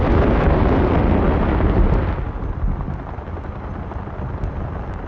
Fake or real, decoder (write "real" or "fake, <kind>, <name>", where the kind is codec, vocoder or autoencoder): real